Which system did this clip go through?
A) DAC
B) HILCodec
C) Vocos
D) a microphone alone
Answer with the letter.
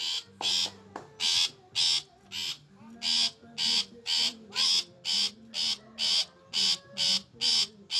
D